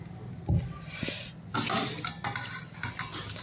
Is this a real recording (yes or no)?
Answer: yes